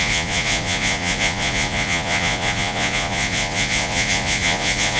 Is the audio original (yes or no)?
no